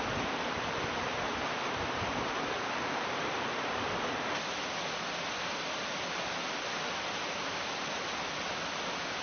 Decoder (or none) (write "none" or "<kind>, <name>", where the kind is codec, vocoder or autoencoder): none